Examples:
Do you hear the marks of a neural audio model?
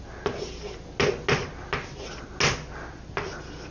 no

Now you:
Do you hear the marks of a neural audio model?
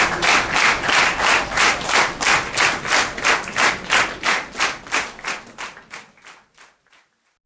no